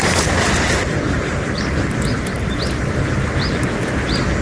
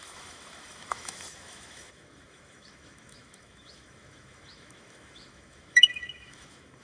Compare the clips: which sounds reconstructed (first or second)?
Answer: second